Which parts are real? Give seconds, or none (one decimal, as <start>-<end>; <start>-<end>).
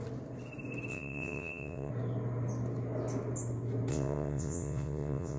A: 0.0-0.9; 1.9-3.9